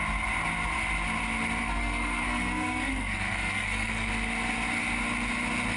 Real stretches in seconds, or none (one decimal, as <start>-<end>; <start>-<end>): 0.0-1.6; 4.1-5.8